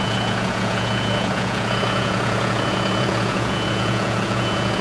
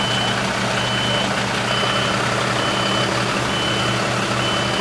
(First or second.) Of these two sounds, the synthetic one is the first